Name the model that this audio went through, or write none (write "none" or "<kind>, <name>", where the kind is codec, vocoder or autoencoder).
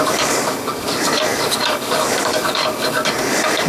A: codec, DAC